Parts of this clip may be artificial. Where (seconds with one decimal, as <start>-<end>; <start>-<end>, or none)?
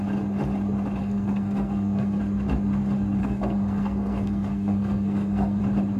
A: 1.0-2.2; 3.2-5.6